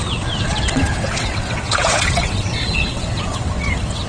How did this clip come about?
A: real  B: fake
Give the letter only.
B